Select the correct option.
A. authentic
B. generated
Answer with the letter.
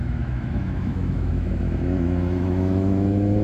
B